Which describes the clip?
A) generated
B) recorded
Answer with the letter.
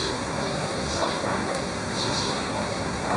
A